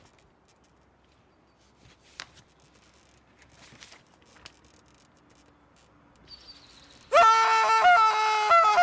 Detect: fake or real real